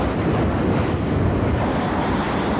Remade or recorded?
recorded